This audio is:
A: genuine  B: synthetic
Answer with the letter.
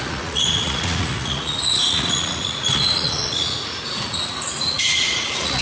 B